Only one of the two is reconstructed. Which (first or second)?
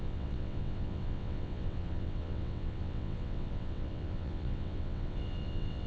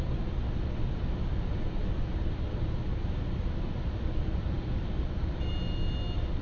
first